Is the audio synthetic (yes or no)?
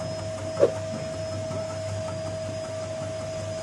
no